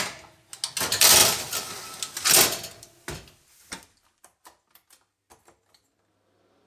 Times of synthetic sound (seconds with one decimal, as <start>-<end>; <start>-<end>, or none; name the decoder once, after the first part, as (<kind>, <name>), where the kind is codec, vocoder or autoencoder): none